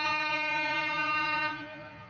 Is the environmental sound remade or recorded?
remade